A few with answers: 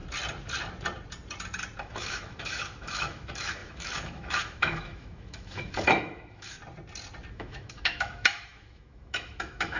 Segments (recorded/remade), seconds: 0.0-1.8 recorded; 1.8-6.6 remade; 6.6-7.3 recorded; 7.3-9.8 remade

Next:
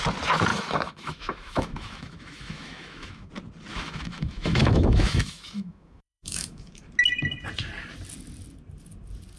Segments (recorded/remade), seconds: 0.0-0.5 recorded; 0.5-3.3 remade; 3.3-3.7 recorded; 3.7-6.8 remade; 6.8-9.4 recorded

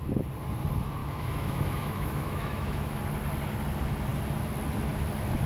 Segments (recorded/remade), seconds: 0.0-1.0 recorded; 1.0-3.0 remade; 3.0-5.5 recorded

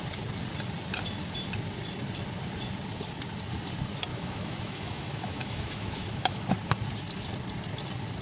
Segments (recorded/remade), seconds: 0.0-4.1 recorded; 4.1-6.5 remade; 6.5-8.2 recorded

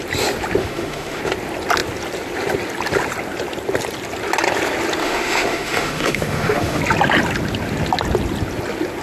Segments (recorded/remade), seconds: 0.0-0.6 recorded; 0.6-1.2 remade; 1.2-5.0 recorded; 5.0-6.8 remade; 6.8-9.0 recorded

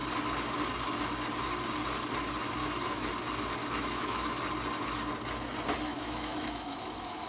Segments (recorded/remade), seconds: 0.0-2.6 recorded; 2.6-3.1 remade; 3.1-3.6 recorded; 3.6-4.4 remade; 4.4-5.9 recorded; 5.9-7.3 remade

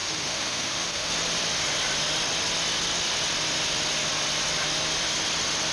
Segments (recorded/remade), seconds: 0.0-1.1 remade; 1.1-5.7 recorded

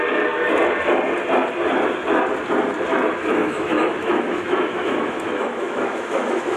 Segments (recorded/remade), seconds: 0.0-3.4 recorded; 3.4-6.6 remade